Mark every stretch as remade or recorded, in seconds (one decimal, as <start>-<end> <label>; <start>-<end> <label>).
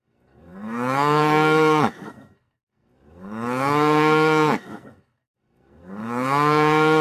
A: 0.0-7.0 remade